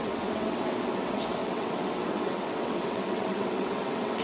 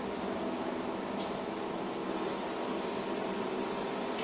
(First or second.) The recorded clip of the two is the second